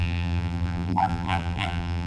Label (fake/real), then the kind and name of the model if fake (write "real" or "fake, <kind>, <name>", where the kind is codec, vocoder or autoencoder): fake, vocoder, BigVGAN v2